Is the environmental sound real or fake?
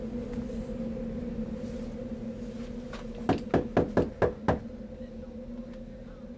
real